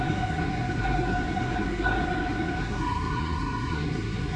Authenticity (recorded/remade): remade